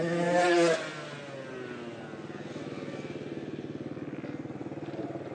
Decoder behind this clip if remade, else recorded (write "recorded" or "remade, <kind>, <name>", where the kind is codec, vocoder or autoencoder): recorded